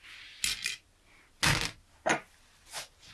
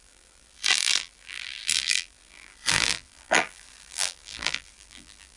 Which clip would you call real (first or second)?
first